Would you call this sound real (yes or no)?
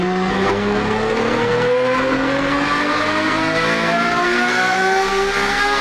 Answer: no